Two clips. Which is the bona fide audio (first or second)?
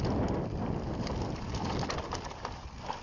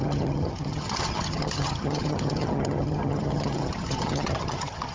first